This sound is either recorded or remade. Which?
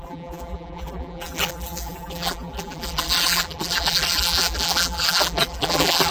remade